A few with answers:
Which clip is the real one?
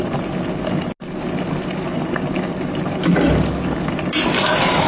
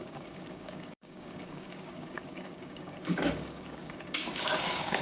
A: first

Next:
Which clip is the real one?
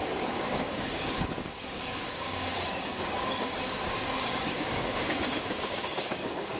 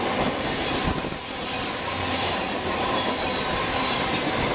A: second